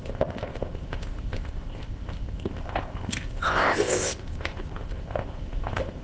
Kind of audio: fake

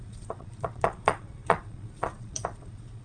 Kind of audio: fake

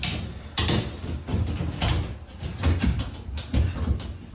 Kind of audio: real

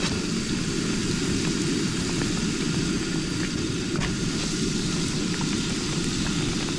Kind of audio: real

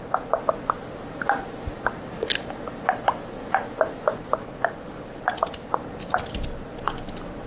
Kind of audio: real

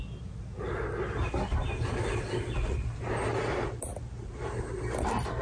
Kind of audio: real